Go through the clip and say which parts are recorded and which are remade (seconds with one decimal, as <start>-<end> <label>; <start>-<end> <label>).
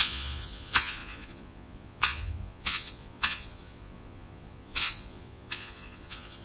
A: 0.0-6.4 remade